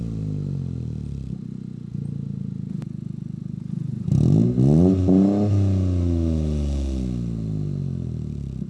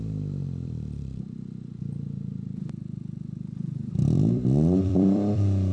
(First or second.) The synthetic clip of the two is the second